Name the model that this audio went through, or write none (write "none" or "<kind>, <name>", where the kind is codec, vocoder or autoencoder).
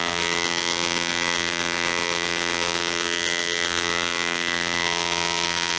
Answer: vocoder, BigVGAN v2